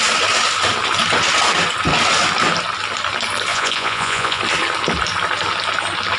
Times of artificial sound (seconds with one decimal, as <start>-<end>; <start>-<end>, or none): 3.5-4.4